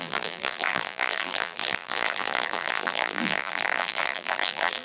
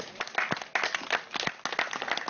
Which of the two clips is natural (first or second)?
second